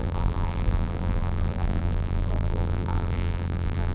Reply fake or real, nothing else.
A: fake